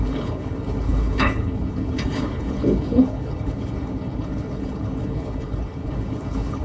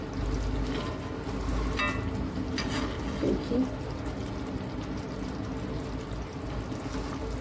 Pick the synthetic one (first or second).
first